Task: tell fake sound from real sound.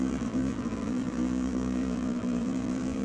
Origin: fake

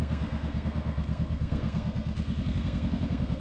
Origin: fake